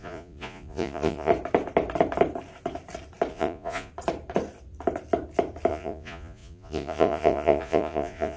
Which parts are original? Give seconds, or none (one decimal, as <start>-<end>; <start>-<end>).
1.3-3.3; 3.9-5.7